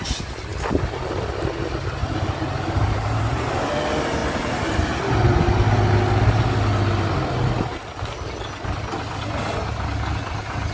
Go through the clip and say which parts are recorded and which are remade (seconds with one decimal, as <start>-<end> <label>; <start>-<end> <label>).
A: 0.0-2.0 recorded; 2.0-3.7 remade; 3.7-10.7 recorded